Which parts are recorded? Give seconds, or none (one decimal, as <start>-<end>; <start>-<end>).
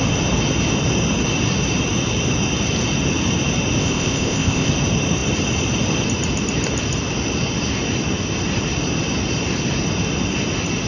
0.0-3.8; 4.7-10.9